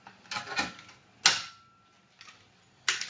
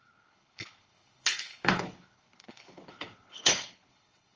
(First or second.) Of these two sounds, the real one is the first